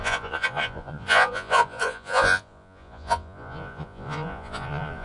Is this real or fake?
fake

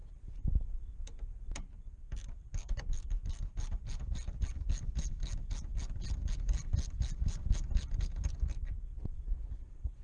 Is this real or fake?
real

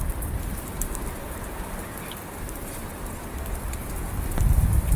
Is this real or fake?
real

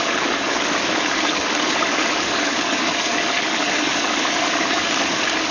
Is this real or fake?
fake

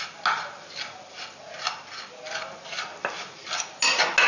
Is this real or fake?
real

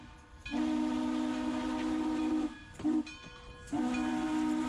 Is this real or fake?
real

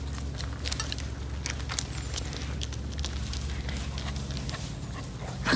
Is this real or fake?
real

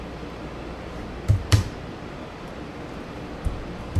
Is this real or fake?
fake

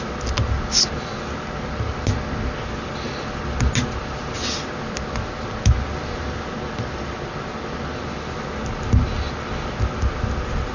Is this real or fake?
real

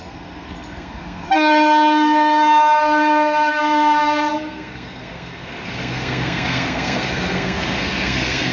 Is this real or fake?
fake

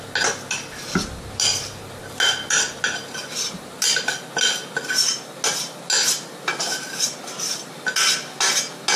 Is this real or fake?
real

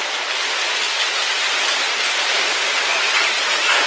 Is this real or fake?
real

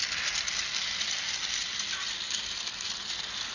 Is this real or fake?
real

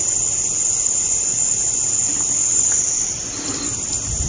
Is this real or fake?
real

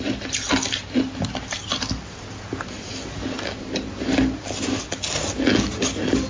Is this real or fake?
real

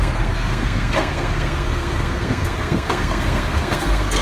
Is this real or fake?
fake